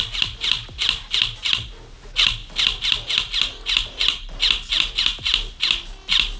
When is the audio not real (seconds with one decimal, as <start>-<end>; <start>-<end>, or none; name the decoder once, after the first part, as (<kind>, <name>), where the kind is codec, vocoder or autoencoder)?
none